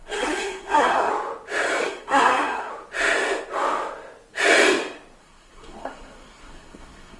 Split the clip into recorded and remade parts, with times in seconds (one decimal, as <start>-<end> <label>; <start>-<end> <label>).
0.0-1.1 remade; 1.1-1.8 recorded; 1.8-2.7 remade; 2.7-5.2 recorded; 5.2-7.2 remade